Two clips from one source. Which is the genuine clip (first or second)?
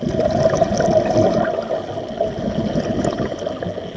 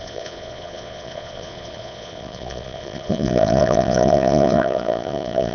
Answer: first